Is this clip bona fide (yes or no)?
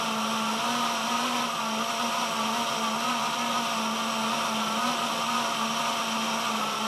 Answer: yes